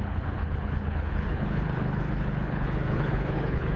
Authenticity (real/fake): fake